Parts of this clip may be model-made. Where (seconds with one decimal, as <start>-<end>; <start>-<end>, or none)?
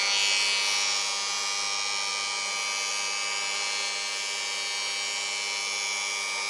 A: none